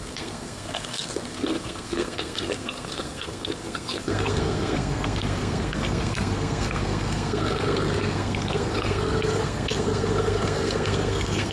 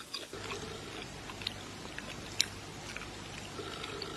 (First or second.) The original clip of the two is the second